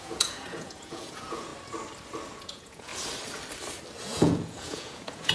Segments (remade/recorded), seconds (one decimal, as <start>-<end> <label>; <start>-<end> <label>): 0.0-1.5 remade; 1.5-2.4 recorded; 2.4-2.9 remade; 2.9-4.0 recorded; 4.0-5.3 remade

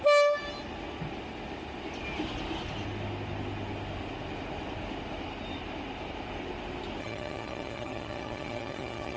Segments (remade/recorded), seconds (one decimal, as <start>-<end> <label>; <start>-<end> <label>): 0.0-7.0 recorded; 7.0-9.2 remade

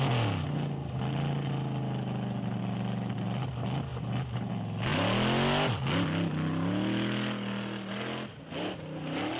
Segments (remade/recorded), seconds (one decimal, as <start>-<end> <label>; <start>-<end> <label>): 0.0-9.4 recorded

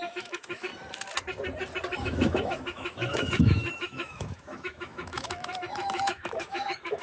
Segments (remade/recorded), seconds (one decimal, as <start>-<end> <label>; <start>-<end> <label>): 0.0-0.7 remade; 0.7-2.0 recorded; 2.0-7.0 remade

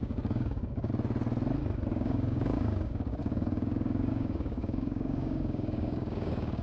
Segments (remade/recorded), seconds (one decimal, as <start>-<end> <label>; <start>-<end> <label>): 0.0-0.9 remade; 0.9-1.9 recorded; 1.9-6.6 remade